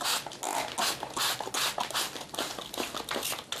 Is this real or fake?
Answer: real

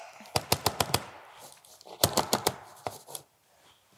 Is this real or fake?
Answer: real